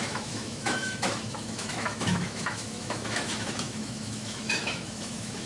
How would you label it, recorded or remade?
remade